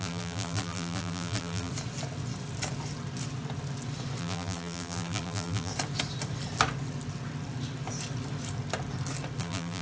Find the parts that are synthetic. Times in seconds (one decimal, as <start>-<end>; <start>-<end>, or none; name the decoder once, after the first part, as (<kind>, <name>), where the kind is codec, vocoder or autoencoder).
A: 0.0-1.7 (vocoder, BigVGAN v2); 4.2-5.7; 9.4-9.8